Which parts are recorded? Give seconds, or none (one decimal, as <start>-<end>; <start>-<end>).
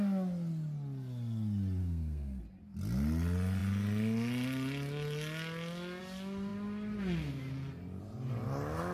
0.0-1.8; 2.4-8.9